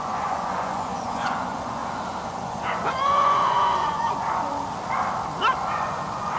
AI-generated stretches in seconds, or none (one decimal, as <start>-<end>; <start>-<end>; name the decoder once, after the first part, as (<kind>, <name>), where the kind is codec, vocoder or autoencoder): 0.0-1.8 (vocoder, Vocos); 2.3-4.5; 5.7-6.4